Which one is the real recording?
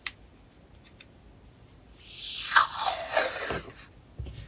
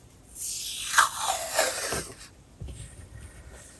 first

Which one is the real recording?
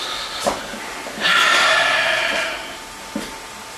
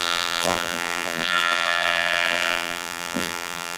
first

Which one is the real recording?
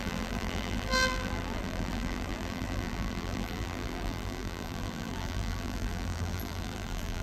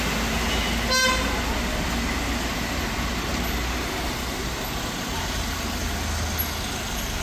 second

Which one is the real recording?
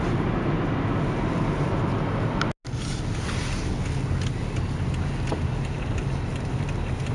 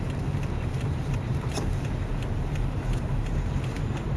first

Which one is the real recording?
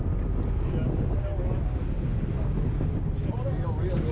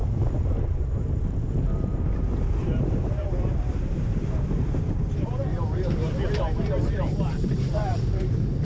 first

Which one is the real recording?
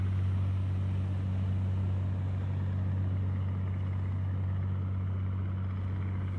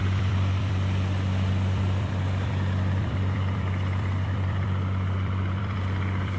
first